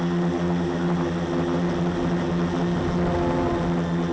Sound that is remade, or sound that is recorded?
recorded